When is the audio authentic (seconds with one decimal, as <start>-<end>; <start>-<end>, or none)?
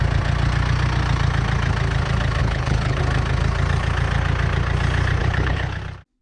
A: 0.0-2.4; 3.0-5.2; 5.8-6.2